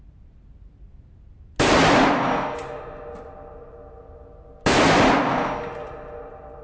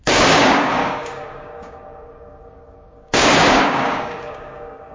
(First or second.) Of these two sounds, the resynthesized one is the second